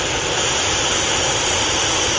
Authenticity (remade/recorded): recorded